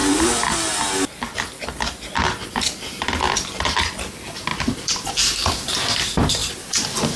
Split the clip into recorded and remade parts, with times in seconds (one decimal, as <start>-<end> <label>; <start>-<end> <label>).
0.0-0.7 remade; 0.7-4.5 recorded; 4.5-6.0 remade; 6.0-6.4 recorded; 6.4-7.2 remade